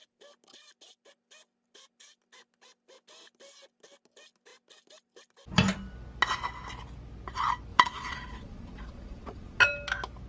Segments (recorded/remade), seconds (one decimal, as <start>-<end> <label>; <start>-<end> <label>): 0.0-7.7 recorded; 7.7-9.6 remade; 9.6-10.3 recorded